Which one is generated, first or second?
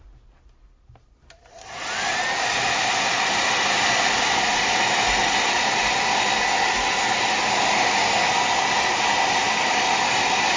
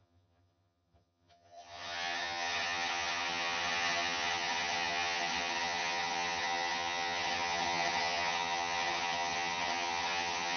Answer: second